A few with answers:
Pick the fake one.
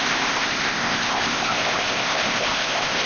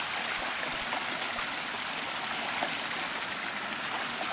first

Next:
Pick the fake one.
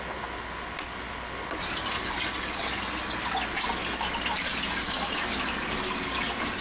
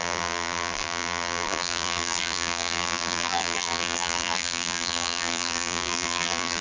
second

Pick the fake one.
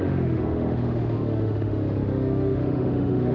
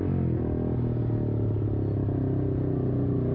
first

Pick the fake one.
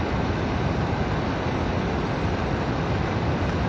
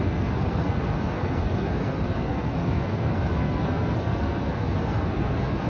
second